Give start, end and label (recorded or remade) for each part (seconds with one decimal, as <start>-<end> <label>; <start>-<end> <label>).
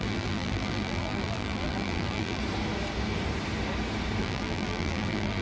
0.0-2.4 remade; 2.4-4.2 recorded; 4.2-5.4 remade